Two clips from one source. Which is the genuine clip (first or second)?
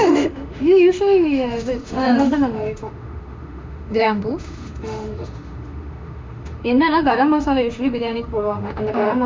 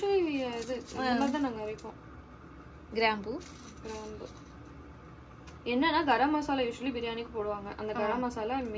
second